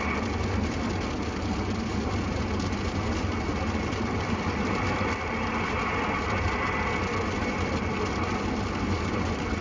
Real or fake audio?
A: real